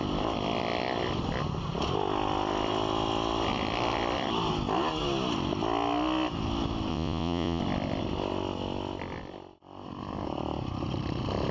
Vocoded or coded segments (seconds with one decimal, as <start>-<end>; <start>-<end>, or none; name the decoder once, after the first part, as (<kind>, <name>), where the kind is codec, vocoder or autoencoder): 6.9-7.6 (vocoder, Vocos)